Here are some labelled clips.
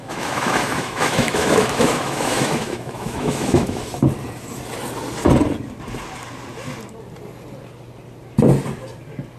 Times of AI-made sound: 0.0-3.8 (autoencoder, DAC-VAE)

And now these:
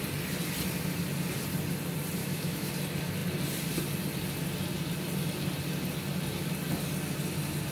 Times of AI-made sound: 2.2-2.7 (autoencoder, DAC-VAE)

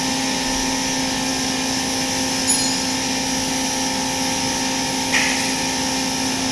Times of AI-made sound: none

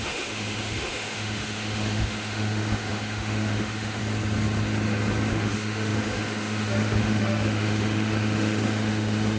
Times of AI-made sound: 0.0-4.0 (autoencoder, DAC-VAE); 5.3-9.4

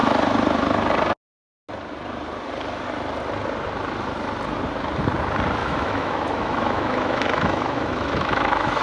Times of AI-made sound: 5.6-8.8 (autoencoder, DAC-VAE)

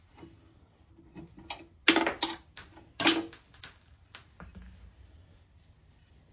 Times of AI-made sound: none

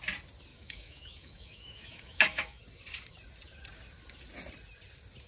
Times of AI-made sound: 0.5-2.6 (autoencoder, DAC-VAE)